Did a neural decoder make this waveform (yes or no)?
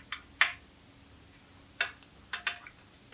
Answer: no